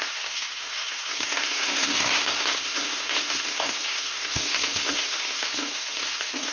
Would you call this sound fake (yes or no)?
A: yes